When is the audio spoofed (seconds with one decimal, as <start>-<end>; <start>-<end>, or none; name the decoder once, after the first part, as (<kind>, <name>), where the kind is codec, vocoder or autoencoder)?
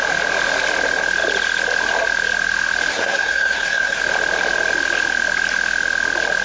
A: 2.9-4.0 (codec, SNAC)